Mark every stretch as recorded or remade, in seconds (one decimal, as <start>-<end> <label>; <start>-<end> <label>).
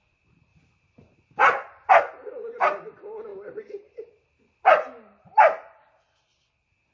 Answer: 0.0-0.5 recorded; 0.5-1.9 remade; 1.9-3.3 recorded; 3.3-4.4 remade; 4.4-6.9 recorded